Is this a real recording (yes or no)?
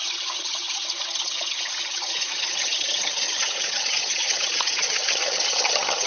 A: no